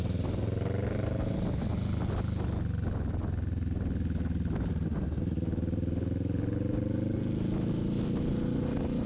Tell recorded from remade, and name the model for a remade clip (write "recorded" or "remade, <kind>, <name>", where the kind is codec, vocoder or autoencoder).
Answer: recorded